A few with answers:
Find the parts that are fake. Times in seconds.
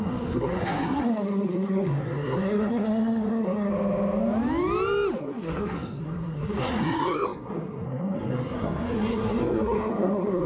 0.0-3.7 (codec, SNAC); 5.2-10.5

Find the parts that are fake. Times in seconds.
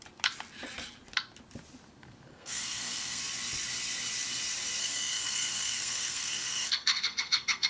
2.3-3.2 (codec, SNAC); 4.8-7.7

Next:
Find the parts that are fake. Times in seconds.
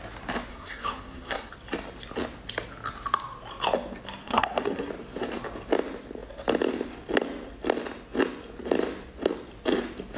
0.5-1.5 (codec, SNAC); 4.2-4.9